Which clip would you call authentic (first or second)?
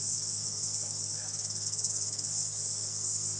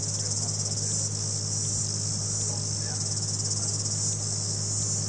second